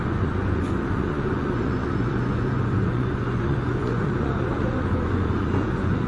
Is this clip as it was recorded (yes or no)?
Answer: no